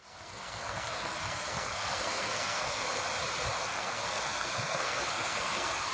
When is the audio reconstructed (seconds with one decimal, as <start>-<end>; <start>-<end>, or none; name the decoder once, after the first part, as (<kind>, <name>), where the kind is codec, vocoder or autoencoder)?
0.0-3.0 (codec, SNAC); 3.6-5.9